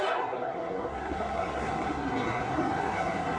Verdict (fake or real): fake